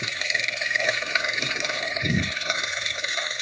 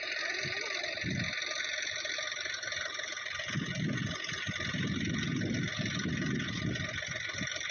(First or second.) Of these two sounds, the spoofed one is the first